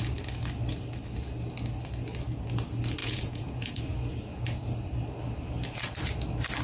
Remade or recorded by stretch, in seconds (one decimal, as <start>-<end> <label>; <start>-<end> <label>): 0.0-3.0 recorded; 3.0-3.8 remade; 3.8-6.6 recorded